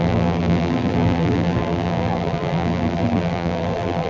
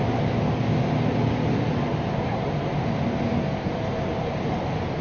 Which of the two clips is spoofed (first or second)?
first